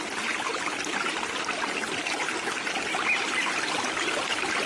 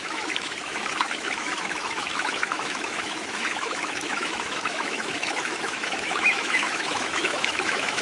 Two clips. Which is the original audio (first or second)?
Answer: first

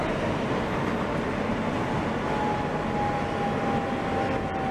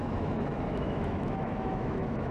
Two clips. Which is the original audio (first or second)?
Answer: first